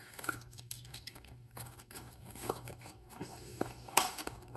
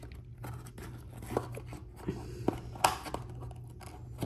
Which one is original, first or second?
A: second